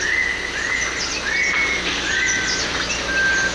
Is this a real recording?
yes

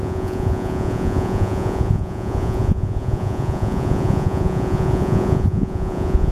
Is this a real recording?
no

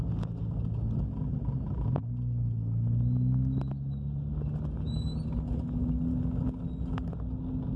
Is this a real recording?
yes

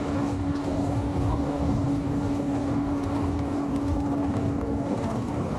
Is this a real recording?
no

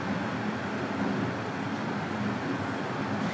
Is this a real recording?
yes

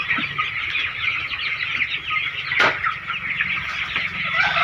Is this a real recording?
yes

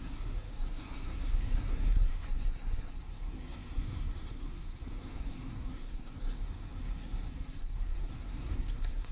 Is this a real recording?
no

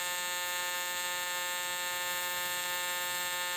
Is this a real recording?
yes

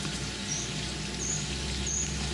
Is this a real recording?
yes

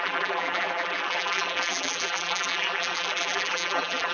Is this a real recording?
no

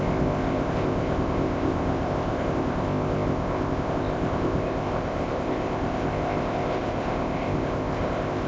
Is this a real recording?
no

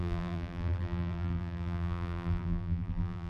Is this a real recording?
no